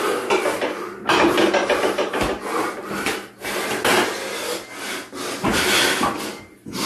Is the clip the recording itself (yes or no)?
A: yes